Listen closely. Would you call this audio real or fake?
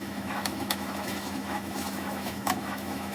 fake